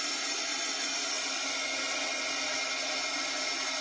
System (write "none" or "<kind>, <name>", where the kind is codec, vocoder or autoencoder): none